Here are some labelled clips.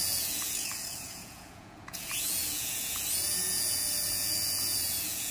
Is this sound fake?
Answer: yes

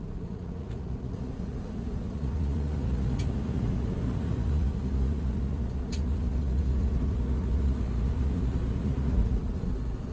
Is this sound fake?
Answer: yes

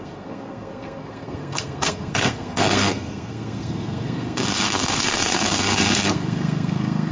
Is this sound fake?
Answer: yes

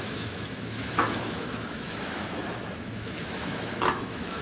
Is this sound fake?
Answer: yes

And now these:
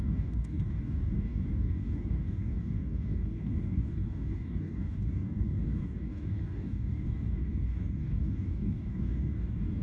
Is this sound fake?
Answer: yes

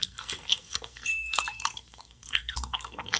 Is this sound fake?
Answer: yes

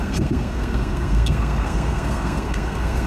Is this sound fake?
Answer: yes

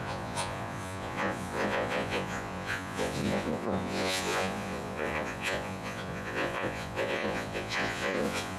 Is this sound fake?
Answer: yes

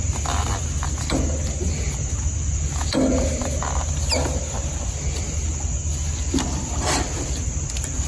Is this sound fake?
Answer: no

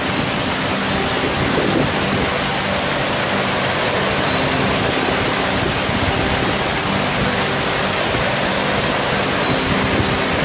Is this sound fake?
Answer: no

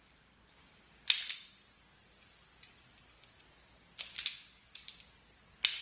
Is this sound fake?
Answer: no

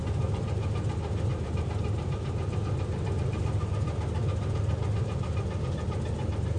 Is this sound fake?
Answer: no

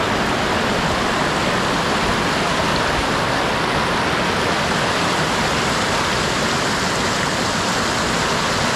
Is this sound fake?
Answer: no